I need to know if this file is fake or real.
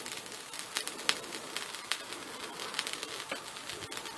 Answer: real